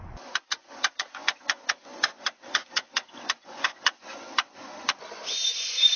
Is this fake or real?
fake